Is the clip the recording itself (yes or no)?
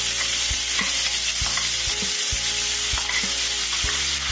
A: yes